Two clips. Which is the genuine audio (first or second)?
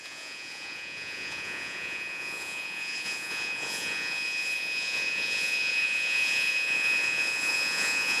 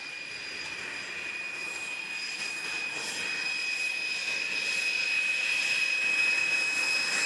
second